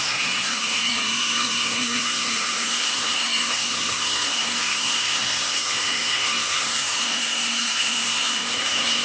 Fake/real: fake